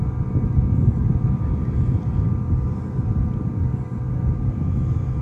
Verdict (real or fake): real